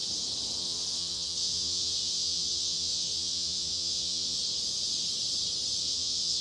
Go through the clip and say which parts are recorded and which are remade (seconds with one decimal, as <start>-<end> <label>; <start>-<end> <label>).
0.0-0.6 recorded; 0.6-4.4 remade; 4.4-5.8 recorded; 5.8-6.4 remade